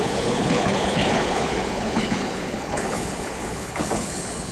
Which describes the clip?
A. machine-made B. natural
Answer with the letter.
A